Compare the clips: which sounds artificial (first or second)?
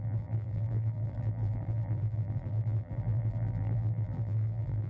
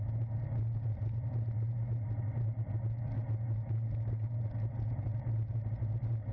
first